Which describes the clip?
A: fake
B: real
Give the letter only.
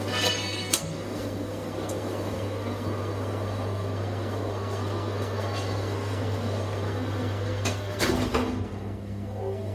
A